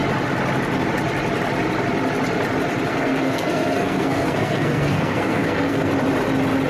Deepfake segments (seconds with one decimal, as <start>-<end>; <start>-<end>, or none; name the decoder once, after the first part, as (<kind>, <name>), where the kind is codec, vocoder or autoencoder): 2.9-5.9 (codec, SNAC)